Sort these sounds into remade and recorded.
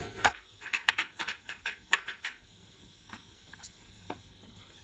remade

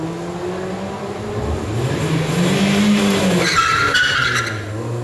recorded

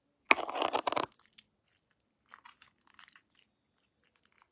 recorded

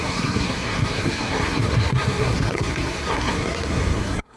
remade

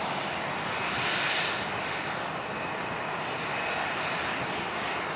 recorded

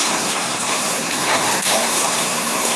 remade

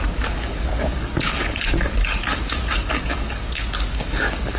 remade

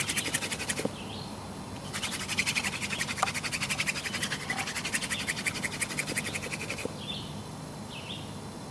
recorded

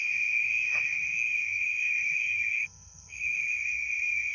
remade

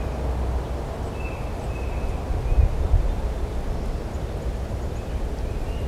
recorded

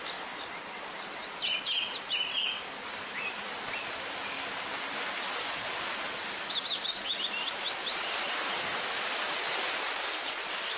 recorded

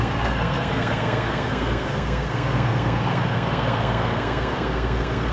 remade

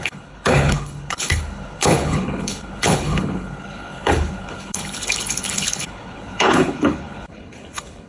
remade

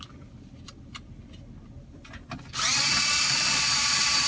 remade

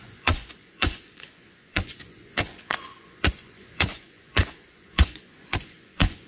remade